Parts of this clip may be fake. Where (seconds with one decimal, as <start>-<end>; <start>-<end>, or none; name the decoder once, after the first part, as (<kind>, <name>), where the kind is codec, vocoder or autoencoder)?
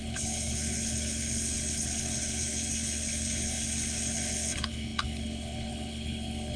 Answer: 0.0-6.6 (codec, HILCodec)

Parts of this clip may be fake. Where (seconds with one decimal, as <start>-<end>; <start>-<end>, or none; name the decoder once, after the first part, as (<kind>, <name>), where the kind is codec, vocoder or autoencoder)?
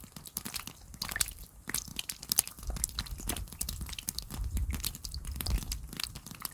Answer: none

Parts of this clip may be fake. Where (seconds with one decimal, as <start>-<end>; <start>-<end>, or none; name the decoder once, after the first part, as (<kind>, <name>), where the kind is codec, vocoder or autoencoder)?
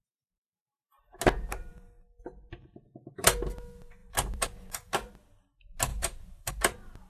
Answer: 4.0-5.1 (vocoder, BigVGAN v2); 5.9-6.6